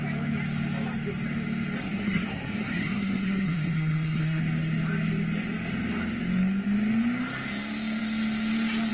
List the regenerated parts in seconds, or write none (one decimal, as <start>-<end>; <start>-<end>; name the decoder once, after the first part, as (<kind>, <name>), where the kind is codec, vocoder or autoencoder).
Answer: 1.8-4.4 (codec, SNAC)

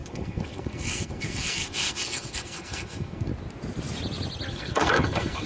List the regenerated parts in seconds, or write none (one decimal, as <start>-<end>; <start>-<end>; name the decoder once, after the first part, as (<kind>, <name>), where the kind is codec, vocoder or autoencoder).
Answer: 0.0-3.3 (codec, SNAC); 4.5-5.5

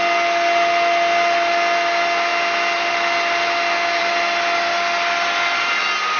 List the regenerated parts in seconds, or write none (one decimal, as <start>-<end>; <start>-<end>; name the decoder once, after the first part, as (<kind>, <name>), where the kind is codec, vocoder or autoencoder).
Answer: none

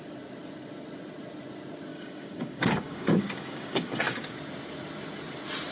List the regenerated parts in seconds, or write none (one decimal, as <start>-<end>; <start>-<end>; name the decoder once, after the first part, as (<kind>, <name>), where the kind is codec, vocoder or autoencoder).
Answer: 1.9-4.3 (codec, DAC)

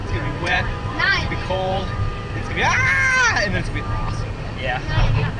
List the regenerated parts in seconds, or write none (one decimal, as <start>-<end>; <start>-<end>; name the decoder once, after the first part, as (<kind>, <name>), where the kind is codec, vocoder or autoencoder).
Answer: 0.0-2.0 (vocoder, Vocos)

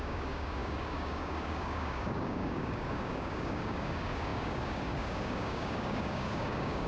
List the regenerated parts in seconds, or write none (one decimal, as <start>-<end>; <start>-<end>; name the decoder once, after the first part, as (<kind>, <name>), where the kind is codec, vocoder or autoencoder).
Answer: 0.0-6.9 (codec, DAC)